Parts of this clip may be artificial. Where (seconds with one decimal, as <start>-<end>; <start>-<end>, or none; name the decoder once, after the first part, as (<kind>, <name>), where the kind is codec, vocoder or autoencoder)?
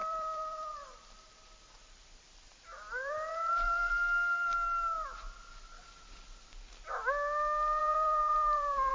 0.0-2.0 (vocoder, BigVGAN v2); 2.7-3.9; 7.8-8.9